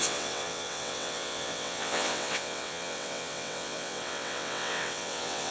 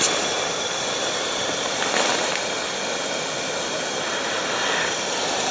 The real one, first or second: second